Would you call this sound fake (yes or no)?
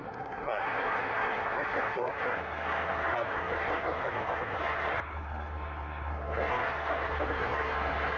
yes